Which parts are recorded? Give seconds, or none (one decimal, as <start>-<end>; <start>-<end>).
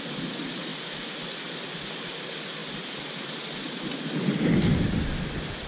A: 0.0-5.7